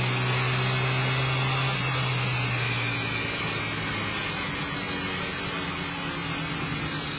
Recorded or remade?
recorded